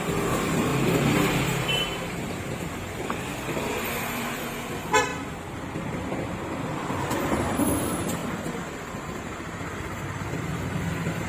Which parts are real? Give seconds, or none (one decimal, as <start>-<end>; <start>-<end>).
5.1-6.9